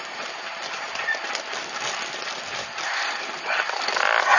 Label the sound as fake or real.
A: real